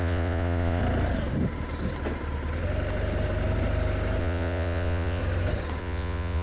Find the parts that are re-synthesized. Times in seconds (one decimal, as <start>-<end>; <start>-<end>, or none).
0.0-0.8; 4.2-5.2; 5.8-6.4